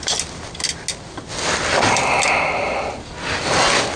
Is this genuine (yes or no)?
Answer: yes